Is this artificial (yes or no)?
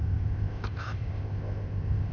yes